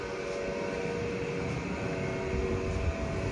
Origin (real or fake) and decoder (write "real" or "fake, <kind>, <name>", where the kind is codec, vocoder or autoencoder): real